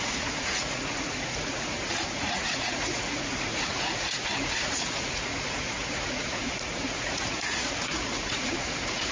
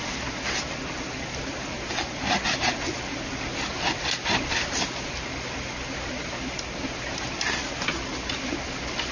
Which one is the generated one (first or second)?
first